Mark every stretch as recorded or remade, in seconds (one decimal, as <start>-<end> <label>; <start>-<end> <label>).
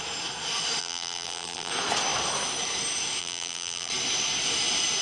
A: 0.0-0.8 recorded; 0.8-1.7 remade; 1.7-3.2 recorded; 3.2-3.9 remade; 3.9-5.0 recorded